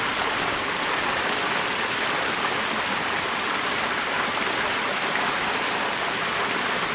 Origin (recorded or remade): recorded